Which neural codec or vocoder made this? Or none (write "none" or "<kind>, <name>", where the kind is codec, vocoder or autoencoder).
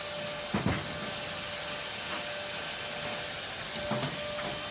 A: none